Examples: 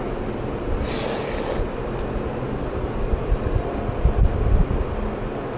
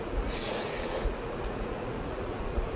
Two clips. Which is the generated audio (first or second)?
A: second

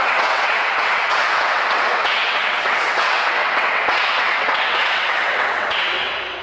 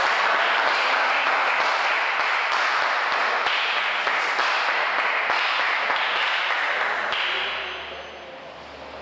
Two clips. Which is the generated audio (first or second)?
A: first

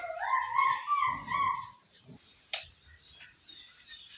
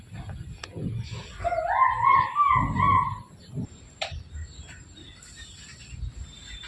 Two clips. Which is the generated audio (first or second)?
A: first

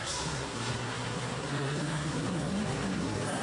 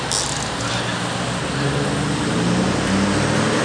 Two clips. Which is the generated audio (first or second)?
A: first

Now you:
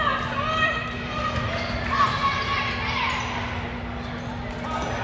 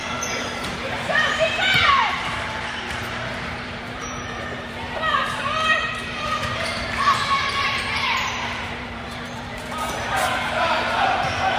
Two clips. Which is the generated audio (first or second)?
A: second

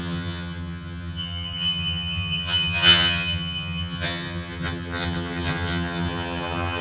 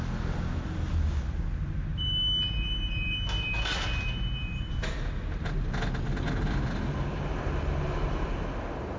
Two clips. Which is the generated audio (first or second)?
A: first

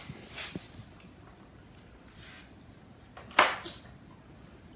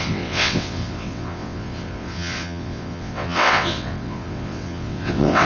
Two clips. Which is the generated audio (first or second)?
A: second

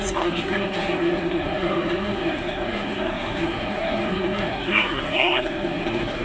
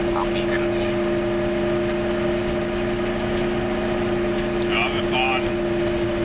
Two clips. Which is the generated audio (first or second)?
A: first